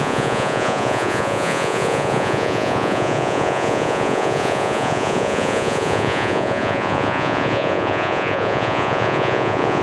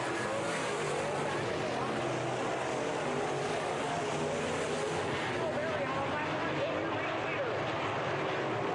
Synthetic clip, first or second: first